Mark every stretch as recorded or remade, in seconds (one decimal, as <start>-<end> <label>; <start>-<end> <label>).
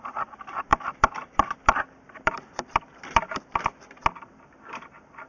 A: 0.0-4.0 remade; 4.0-5.3 recorded